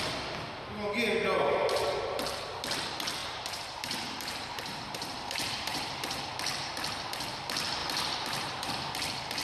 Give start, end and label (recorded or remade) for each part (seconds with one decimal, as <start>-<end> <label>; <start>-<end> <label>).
0.0-3.2 recorded; 3.2-6.2 remade; 6.2-7.8 recorded; 7.8-8.7 remade; 8.7-9.4 recorded